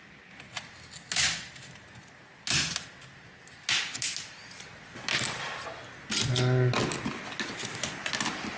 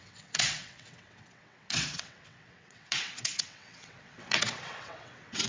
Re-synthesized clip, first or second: second